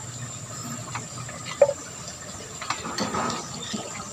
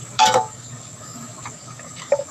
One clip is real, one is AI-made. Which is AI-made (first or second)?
second